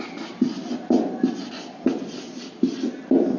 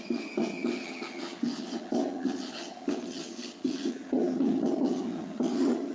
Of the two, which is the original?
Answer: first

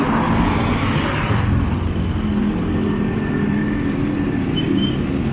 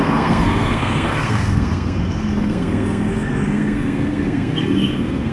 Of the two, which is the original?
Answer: first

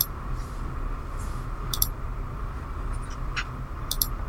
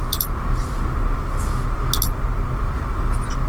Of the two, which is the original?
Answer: second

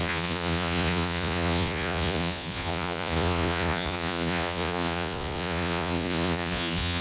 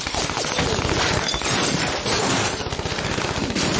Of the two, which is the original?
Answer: second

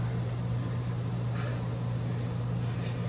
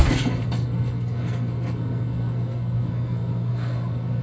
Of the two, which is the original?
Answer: first